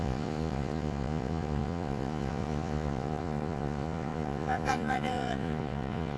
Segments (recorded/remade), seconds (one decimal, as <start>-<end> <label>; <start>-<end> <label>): 0.0-6.2 remade